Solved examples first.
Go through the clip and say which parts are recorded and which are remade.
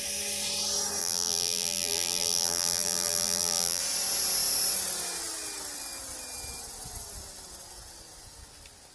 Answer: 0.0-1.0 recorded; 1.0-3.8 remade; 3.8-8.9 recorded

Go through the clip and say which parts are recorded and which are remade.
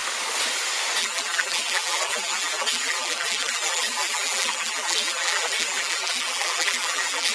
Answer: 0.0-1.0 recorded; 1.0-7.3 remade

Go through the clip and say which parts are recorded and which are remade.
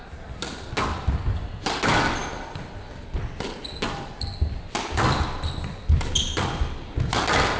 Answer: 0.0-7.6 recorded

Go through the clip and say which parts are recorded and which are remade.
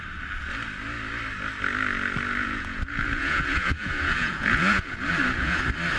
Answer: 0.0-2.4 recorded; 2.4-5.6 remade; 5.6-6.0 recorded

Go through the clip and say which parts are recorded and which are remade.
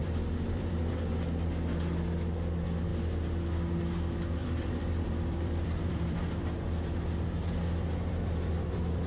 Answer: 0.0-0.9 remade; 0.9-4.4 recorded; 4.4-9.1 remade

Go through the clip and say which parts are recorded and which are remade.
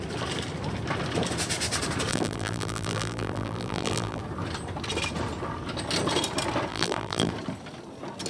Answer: 0.0-2.1 recorded; 2.1-4.2 remade; 4.2-6.7 recorded; 6.7-7.3 remade; 7.3-8.3 recorded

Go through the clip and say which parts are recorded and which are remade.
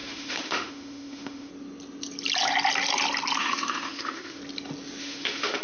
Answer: 0.0-1.5 remade; 1.5-3.4 recorded; 3.4-4.4 remade; 4.4-5.0 recorded; 5.0-5.6 remade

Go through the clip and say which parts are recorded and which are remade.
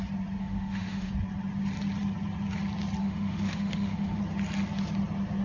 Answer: 0.0-0.4 recorded; 0.4-1.1 remade; 1.1-3.0 recorded; 3.0-4.2 remade; 4.2-5.4 recorded